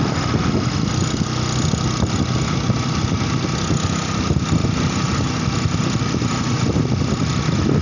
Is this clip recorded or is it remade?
recorded